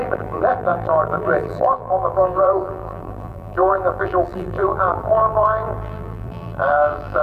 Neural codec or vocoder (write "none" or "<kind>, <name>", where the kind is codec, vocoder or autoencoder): vocoder, BigVGAN v2